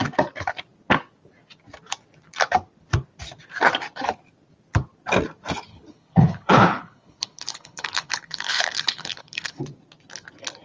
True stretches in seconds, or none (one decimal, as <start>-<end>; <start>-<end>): 0.0-5.7; 9.6-10.6